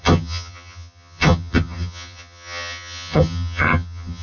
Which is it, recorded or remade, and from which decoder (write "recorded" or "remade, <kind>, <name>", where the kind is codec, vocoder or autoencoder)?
remade, vocoder, HiFi-GAN